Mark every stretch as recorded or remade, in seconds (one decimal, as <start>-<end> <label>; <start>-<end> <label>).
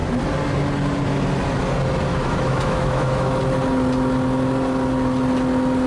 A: 0.0-2.1 recorded; 2.1-3.4 remade; 3.4-5.9 recorded